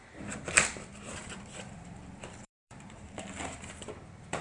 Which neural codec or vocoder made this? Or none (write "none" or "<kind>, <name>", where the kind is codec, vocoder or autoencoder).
vocoder, BigVGAN v2